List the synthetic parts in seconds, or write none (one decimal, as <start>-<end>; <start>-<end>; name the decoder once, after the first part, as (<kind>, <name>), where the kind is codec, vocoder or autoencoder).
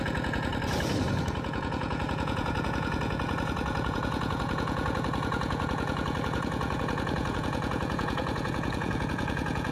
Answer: 0.0-0.5 (vocoder, Vocos); 1.2-9.7